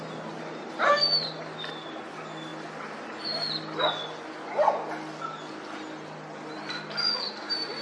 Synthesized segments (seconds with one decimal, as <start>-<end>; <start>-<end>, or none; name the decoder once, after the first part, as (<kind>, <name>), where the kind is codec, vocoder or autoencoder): none